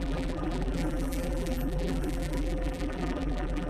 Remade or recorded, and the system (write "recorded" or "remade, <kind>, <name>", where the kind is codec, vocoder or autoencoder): remade, vocoder, BigVGAN v2